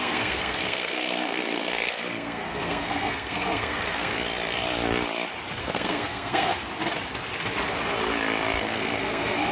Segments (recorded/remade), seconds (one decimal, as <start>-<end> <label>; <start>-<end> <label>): 0.0-4.1 remade; 4.1-5.6 recorded; 5.6-6.5 remade; 6.5-8.6 recorded; 8.6-9.5 remade